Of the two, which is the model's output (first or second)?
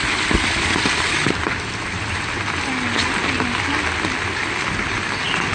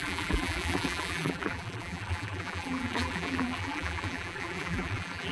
second